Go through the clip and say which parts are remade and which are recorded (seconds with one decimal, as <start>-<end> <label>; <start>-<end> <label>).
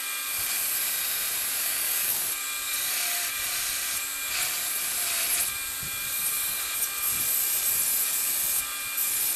0.0-1.6 recorded; 1.6-2.2 remade; 2.2-9.4 recorded